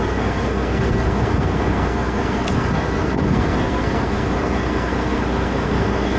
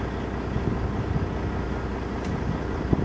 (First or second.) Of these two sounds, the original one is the second